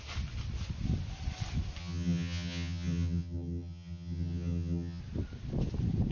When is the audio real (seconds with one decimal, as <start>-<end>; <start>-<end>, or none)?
0.0-1.8; 5.0-6.1